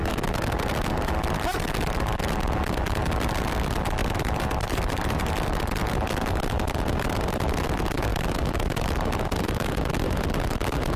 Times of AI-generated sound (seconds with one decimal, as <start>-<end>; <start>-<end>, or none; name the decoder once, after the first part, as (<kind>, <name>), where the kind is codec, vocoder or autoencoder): 4.0-5.3 (vocoder, BigVGAN v2)